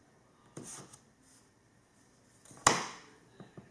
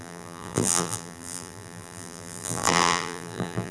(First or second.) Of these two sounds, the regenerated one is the second